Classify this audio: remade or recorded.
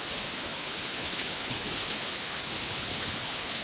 remade